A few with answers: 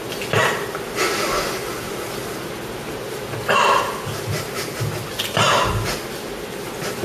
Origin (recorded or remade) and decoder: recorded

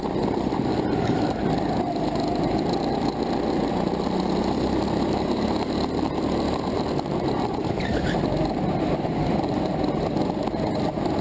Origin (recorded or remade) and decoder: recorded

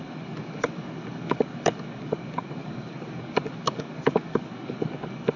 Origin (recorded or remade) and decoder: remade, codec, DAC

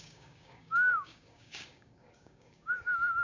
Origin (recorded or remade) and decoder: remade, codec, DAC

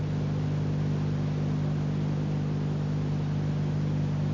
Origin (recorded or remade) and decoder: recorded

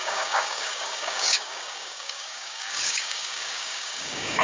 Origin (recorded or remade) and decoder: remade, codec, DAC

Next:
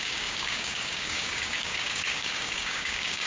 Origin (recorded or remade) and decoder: remade, codec, DAC